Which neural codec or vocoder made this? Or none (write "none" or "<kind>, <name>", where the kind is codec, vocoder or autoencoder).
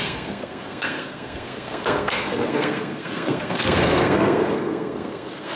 codec, SNAC